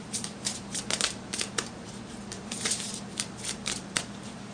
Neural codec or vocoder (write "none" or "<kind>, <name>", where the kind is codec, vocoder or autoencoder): vocoder, BigVGAN v2